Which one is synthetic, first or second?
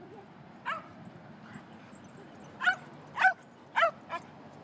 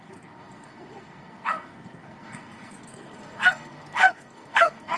second